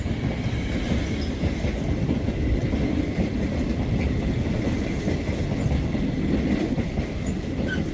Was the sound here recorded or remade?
recorded